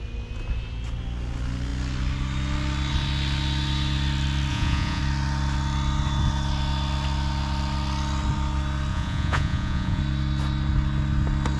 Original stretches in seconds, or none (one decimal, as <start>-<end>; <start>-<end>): 0.0-4.5; 5.0-8.9; 10.0-11.6